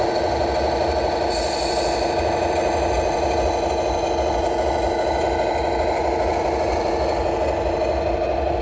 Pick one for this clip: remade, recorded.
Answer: recorded